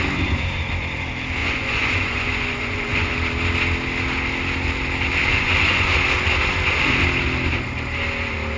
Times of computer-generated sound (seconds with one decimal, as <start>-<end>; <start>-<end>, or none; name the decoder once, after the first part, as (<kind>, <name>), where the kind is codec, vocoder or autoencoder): 1.4-3.1 (vocoder, Vocos); 5.3-5.9